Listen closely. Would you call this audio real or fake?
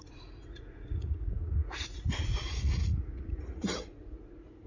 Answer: fake